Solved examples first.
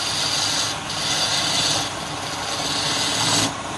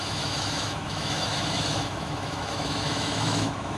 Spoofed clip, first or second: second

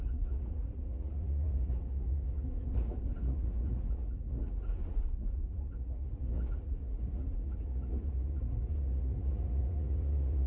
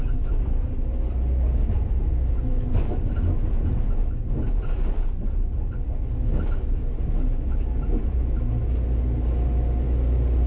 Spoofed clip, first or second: first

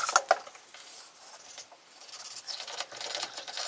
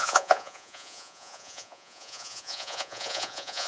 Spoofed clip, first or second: second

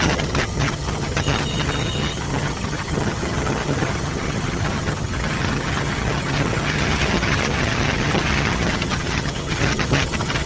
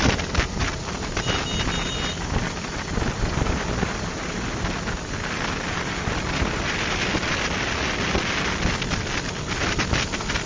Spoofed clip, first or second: first